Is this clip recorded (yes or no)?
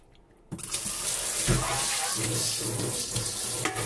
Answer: yes